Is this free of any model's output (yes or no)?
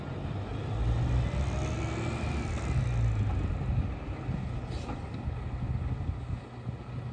yes